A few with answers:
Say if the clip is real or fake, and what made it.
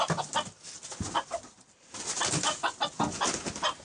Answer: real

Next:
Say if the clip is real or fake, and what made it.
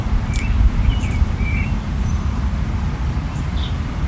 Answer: fake, vocoder, BigVGAN v2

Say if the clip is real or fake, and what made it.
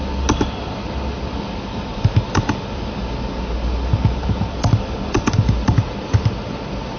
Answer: real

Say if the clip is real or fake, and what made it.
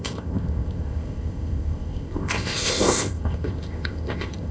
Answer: fake, codec, ZipCodec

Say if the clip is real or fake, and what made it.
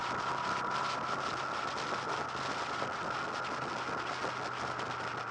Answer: real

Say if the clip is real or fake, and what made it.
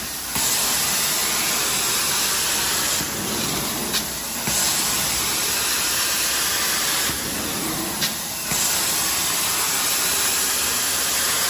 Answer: real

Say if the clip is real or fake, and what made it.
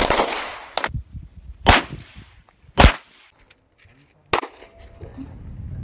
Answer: real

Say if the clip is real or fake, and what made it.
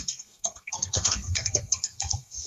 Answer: fake, codec, SNAC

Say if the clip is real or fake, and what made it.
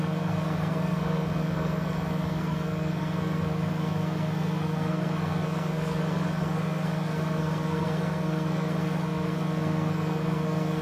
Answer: fake, codec, SNAC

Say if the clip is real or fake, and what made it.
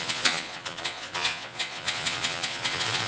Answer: fake, vocoder, Vocos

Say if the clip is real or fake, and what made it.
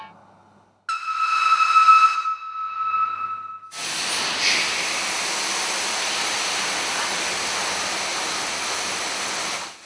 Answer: real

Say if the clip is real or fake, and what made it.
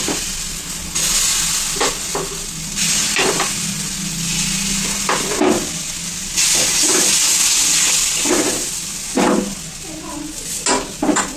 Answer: real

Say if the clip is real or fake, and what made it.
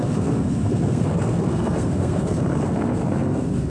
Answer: fake, codec, SNAC